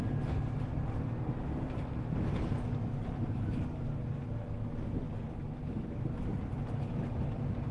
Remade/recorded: recorded